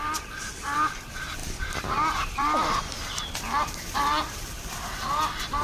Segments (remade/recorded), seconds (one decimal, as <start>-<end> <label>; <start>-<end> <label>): 0.0-5.6 recorded